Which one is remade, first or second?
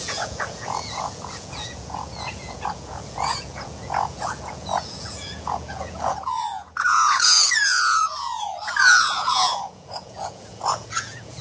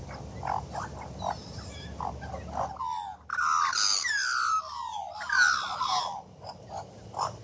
first